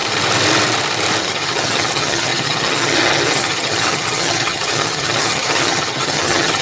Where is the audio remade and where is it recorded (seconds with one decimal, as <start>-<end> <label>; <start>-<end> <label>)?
0.0-1.2 recorded; 1.2-6.6 remade